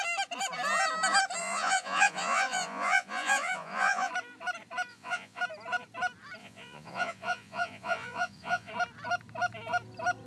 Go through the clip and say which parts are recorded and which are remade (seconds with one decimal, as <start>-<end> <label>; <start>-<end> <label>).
0.0-1.4 recorded; 1.4-4.1 remade; 4.1-4.9 recorded; 4.9-5.4 remade; 5.4-6.4 recorded; 6.4-8.7 remade; 8.7-10.3 recorded